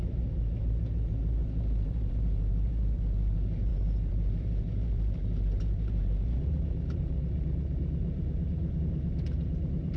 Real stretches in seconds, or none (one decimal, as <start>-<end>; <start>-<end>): none